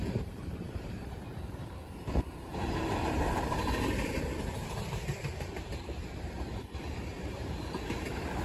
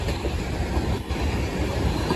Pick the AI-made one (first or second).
first